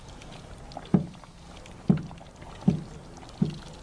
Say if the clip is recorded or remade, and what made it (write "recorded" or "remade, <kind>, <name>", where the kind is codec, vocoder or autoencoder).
recorded